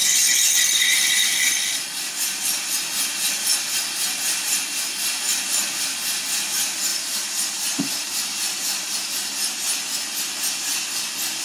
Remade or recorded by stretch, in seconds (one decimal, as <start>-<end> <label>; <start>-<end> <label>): 0.0-6.9 recorded; 6.9-9.1 remade; 9.1-11.4 recorded